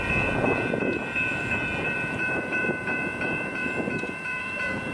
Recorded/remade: remade